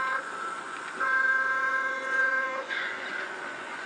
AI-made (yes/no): yes